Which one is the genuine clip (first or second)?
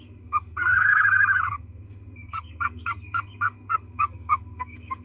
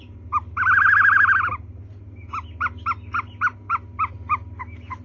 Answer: second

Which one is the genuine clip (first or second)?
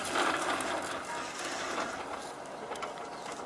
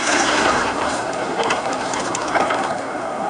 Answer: first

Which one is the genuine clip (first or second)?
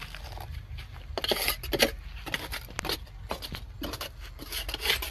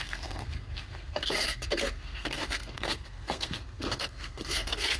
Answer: first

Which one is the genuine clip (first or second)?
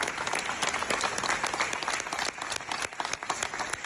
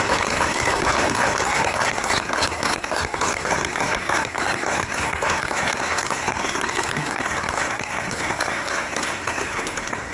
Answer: first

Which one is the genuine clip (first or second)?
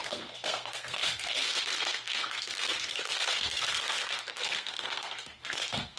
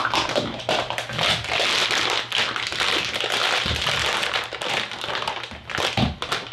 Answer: second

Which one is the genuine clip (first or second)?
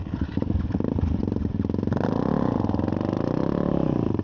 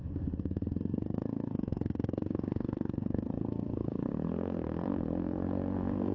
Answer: first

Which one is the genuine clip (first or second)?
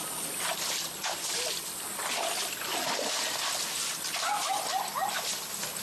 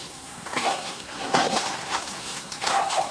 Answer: first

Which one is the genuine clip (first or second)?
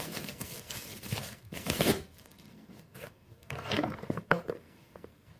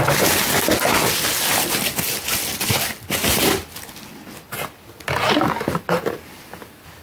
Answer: second